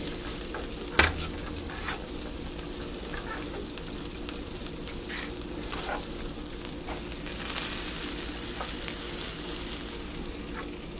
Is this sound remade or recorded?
recorded